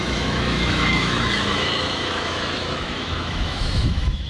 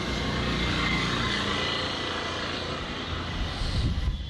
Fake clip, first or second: first